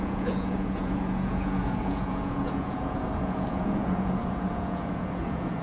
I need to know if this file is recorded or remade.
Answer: remade